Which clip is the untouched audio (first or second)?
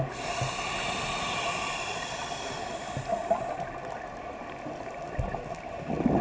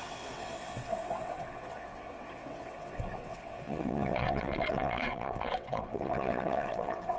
first